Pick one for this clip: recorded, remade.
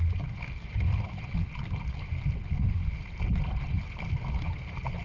recorded